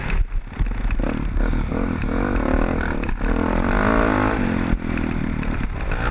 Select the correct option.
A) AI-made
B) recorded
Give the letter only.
B